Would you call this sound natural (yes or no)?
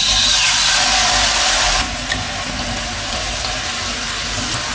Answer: yes